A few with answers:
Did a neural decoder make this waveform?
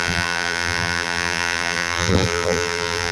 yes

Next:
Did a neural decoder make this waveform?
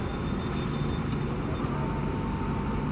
no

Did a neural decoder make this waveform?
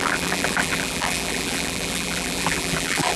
yes